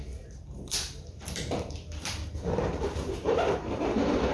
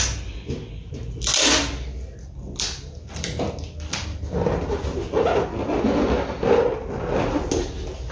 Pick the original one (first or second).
second